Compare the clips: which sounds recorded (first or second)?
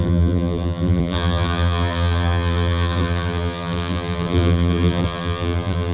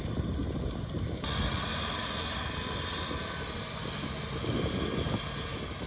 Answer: second